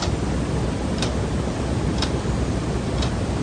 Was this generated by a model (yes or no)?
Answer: no